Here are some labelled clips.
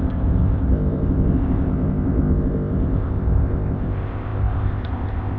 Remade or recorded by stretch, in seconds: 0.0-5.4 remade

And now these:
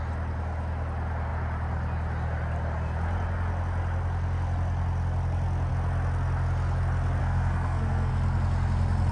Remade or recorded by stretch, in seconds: 0.0-7.2 recorded; 7.2-8.1 remade; 8.1-9.1 recorded

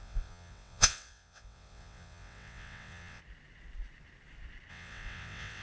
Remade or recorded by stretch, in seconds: 0.0-3.2 remade; 3.2-4.7 recorded; 4.7-5.6 remade

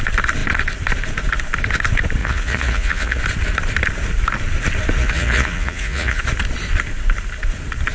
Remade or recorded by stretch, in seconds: 0.0-2.2 recorded; 2.2-3.2 remade; 3.2-5.0 recorded; 5.0-6.2 remade; 6.2-7.9 recorded

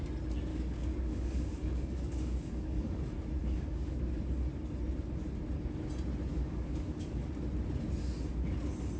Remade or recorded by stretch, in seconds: 0.0-0.5 recorded; 0.5-3.0 remade; 3.0-3.4 recorded; 3.4-4.0 remade; 4.0-6.3 recorded; 6.3-7.3 remade; 7.3-9.0 recorded

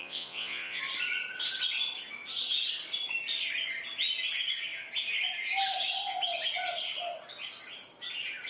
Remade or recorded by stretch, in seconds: 0.0-0.8 remade; 0.8-8.5 recorded

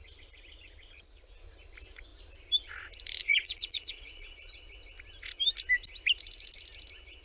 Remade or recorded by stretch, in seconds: 0.0-3.2 recorded; 3.2-4.5 remade; 4.5-7.2 recorded